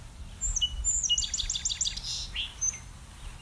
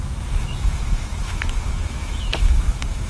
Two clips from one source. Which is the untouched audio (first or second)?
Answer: first